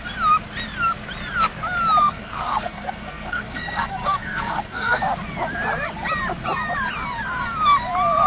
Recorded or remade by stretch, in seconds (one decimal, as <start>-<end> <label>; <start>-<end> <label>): 0.0-2.0 recorded; 2.0-5.0 remade; 5.0-8.3 recorded